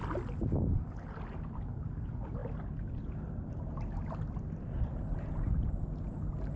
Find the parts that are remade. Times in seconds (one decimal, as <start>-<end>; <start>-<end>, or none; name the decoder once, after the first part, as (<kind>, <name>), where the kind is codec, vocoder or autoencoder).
none